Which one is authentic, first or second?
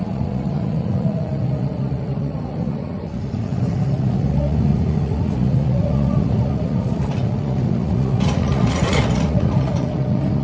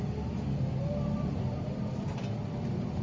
second